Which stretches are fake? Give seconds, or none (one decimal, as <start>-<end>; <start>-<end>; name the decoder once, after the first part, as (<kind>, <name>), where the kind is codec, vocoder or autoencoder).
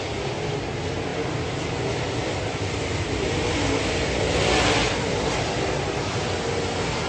none